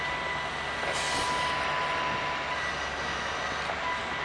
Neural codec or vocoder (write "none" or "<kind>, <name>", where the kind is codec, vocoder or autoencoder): none